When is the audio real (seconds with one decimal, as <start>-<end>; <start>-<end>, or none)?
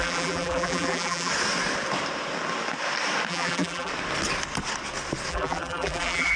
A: 1.3-3.3; 3.9-5.3